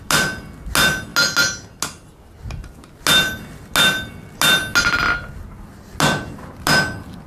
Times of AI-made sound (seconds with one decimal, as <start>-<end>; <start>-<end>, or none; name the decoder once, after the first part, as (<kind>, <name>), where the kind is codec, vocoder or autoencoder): none